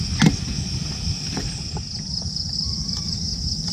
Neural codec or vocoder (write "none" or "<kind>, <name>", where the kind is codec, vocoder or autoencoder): none